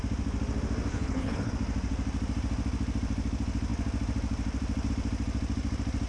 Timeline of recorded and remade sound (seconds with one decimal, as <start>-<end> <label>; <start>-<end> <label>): 0.0-0.9 recorded; 0.9-1.5 remade; 1.5-6.1 recorded